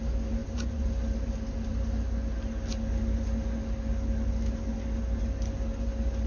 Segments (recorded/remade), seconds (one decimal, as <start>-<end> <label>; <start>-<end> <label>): 0.0-0.4 recorded; 0.4-0.9 remade; 0.9-6.3 recorded